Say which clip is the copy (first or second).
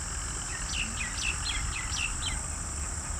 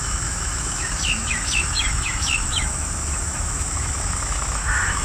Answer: second